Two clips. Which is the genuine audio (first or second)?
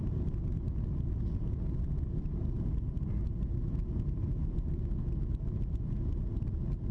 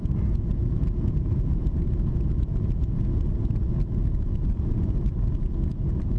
first